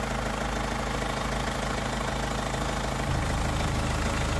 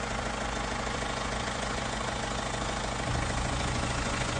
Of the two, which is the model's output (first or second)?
second